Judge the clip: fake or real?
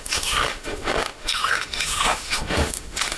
fake